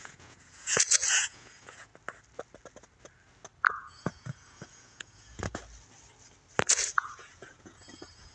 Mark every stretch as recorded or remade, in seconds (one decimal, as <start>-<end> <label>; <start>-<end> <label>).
0.0-1.9 remade; 1.9-3.7 recorded; 3.7-5.6 remade; 5.6-6.7 recorded; 6.7-8.3 remade